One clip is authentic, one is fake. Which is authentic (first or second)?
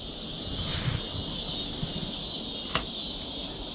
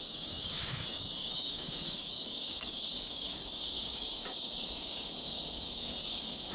first